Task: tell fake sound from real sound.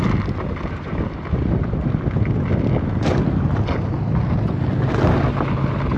real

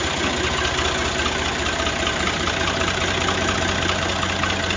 real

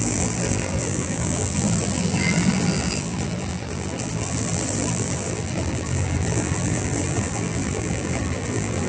fake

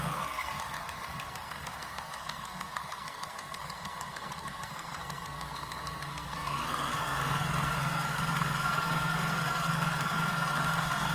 fake